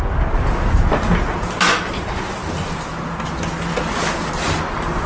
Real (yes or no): yes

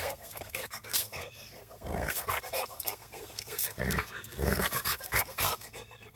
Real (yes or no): no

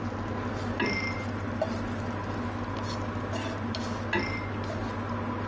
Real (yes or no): yes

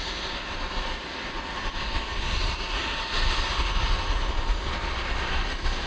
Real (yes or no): yes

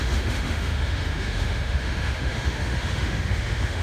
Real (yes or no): no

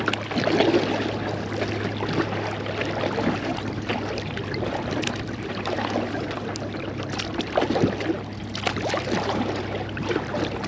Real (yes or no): yes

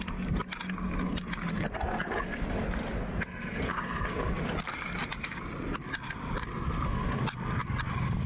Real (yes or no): yes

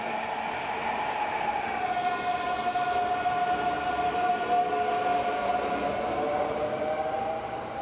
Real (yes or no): yes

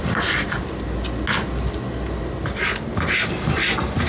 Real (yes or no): yes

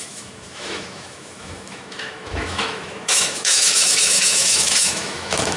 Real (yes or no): no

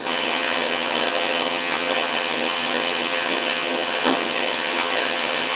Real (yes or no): no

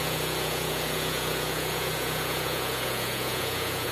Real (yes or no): no